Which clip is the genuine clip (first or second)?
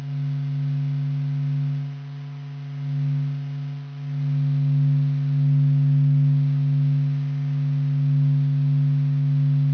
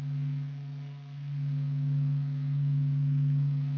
first